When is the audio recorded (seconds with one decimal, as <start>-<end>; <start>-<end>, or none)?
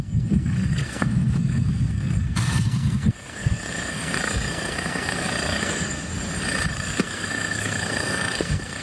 6.1-6.7